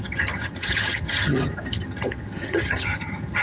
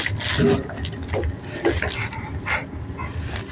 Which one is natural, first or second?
second